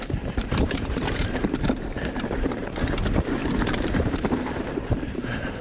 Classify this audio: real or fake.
fake